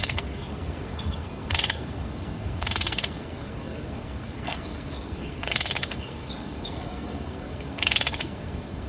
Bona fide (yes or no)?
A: no